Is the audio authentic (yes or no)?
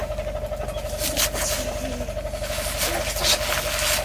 yes